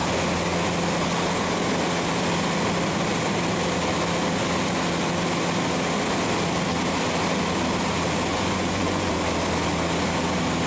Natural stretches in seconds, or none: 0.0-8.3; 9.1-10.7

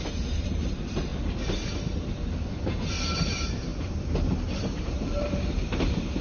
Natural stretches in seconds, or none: 1.1-3.2; 3.7-4.6

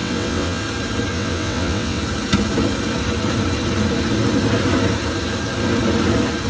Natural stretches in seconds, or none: 0.6-1.1; 2.0-6.5

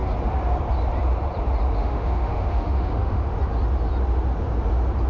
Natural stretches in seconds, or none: 0.0-1.8; 3.2-5.1

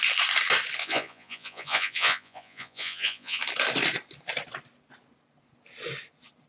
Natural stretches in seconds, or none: 0.0-0.8; 3.4-6.5